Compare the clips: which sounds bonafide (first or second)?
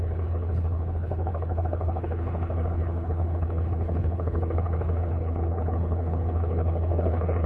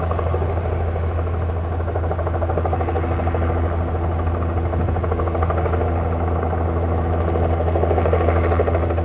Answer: second